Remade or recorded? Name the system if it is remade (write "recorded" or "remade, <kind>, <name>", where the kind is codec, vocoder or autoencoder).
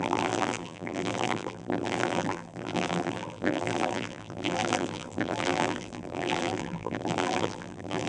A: remade, vocoder, BigVGAN v2